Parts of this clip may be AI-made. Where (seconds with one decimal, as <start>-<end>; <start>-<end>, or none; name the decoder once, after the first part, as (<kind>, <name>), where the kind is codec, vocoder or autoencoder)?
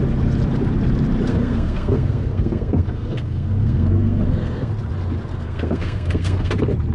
1.3-4.7 (codec, SNAC); 5.3-6.5